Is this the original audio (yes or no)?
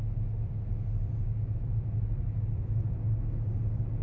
yes